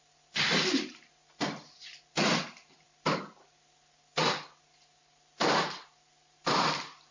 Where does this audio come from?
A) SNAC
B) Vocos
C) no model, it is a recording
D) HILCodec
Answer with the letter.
C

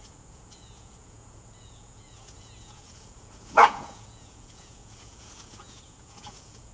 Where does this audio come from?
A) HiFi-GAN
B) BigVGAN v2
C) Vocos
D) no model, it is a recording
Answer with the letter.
C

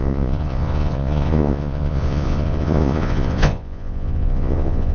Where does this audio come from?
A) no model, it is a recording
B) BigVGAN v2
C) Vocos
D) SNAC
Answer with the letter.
C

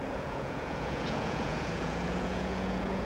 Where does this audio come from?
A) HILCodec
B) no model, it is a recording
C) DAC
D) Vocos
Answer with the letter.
D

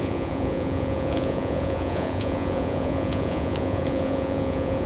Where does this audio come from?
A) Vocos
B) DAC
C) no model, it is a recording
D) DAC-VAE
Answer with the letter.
A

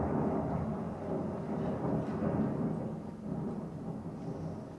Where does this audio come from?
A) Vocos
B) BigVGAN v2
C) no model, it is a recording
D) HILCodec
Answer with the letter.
C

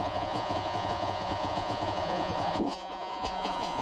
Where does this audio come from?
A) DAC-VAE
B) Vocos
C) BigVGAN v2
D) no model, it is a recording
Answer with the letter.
B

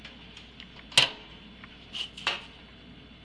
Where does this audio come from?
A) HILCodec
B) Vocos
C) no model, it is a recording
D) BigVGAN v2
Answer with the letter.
C